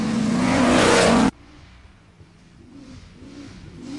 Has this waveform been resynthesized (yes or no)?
yes